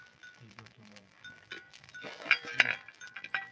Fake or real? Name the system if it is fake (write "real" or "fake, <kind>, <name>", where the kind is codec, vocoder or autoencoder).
fake, vocoder, BigVGAN v2